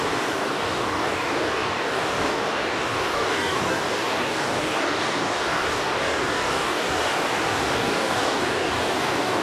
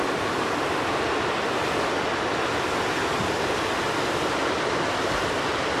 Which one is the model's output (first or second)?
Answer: first